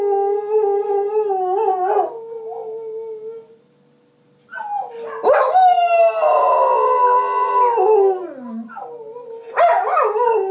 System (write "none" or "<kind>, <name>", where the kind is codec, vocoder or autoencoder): none